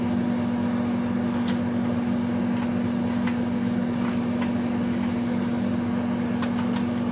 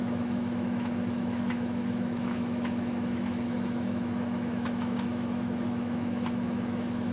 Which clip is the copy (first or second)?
second